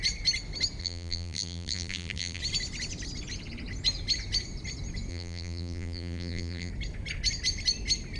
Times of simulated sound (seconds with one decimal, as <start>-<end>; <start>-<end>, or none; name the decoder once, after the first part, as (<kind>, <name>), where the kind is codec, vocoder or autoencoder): 0.8-2.4 (vocoder, BigVGAN v2); 5.1-6.7